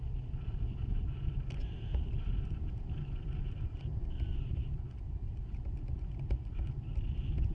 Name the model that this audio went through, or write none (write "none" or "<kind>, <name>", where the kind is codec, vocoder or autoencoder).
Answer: none